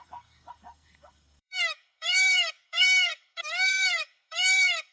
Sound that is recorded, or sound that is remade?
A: remade